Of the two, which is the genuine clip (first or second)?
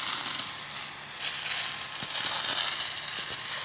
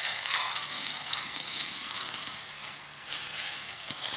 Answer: first